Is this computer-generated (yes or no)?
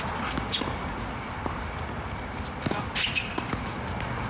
no